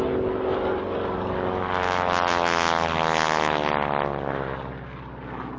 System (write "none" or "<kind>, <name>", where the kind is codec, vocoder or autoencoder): none